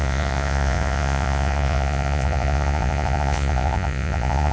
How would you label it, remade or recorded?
remade